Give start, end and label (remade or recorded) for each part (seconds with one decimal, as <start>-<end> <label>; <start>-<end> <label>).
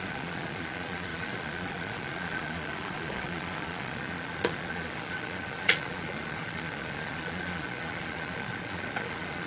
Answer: 0.0-9.5 remade